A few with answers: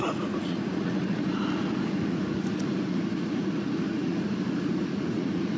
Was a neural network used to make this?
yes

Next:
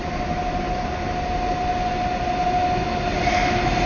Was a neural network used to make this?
no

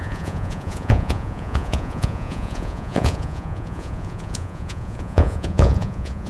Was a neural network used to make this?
yes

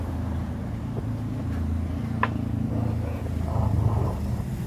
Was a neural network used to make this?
no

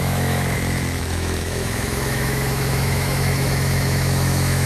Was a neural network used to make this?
yes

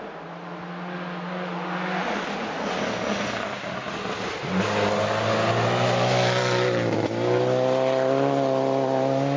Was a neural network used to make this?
no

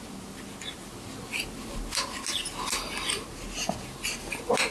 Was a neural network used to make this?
no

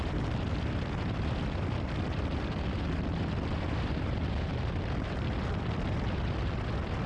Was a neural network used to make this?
yes